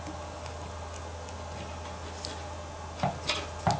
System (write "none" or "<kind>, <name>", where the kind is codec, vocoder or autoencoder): none